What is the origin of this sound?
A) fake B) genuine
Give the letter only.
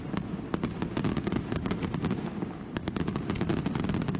B